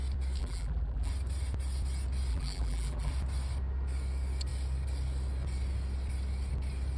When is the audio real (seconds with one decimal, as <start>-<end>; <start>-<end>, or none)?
0.0-0.4; 1.1-2.3; 3.1-7.0